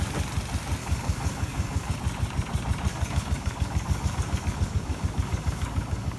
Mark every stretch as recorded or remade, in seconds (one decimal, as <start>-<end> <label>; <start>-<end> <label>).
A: 0.0-0.8 recorded; 0.8-1.9 remade; 1.9-2.9 recorded; 2.9-6.2 remade